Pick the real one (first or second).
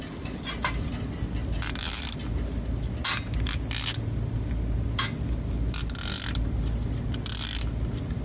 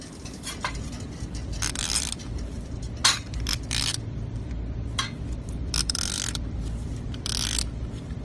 first